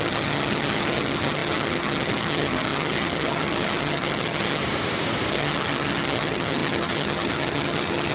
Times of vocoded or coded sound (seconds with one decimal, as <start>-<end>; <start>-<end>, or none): 0.0-4.6; 5.3-8.1